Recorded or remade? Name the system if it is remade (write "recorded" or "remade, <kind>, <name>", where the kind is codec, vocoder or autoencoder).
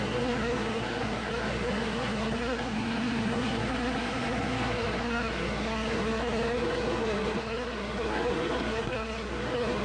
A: remade, codec, SNAC